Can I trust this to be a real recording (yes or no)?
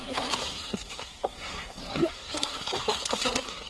no